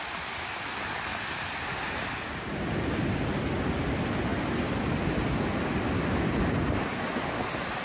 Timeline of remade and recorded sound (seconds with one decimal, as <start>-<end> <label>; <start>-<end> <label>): 0.0-7.8 recorded